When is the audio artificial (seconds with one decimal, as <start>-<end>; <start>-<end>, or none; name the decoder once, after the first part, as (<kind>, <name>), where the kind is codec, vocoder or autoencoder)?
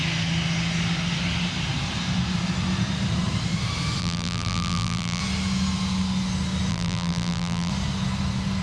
4.0-5.2 (vocoder, BigVGAN v2); 6.7-7.7